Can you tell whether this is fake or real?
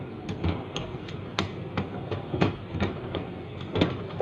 fake